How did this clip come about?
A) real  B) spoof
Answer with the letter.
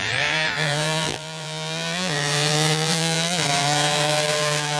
B